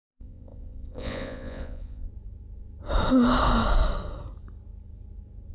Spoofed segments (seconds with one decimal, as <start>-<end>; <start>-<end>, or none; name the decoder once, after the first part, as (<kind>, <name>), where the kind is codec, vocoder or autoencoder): 0.0-2.1 (vocoder, Vocos)